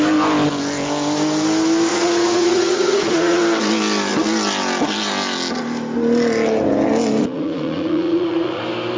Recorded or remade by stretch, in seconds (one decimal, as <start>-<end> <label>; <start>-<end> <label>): 0.0-1.9 recorded; 1.9-3.4 remade; 3.4-7.2 recorded; 7.2-8.6 remade; 8.6-9.0 recorded